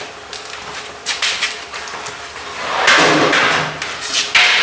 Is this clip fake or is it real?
real